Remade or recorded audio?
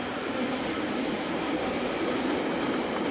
recorded